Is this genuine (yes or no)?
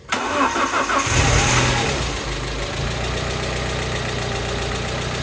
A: yes